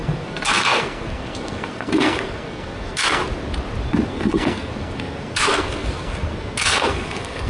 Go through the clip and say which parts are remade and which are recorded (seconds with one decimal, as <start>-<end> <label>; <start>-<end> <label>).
0.0-3.2 remade; 3.2-4.1 recorded; 4.1-7.5 remade